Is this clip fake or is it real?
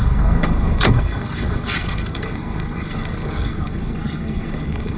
fake